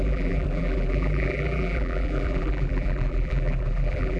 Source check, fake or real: fake